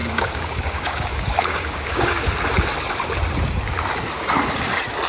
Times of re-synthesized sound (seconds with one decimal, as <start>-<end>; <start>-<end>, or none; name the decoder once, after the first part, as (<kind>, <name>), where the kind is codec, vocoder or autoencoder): 0.0-2.2 (codec, DAC)